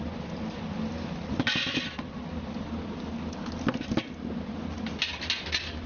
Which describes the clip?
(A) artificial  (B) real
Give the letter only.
B